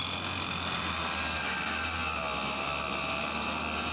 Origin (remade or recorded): recorded